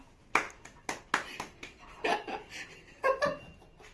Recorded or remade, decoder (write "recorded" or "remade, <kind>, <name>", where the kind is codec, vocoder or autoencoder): recorded